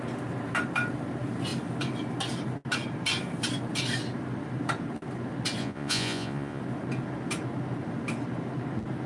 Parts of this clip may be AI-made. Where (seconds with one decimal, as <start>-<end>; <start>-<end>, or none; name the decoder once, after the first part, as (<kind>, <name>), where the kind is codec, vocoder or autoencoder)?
5.6-6.6 (vocoder, Vocos)